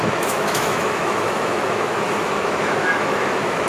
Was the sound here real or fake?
fake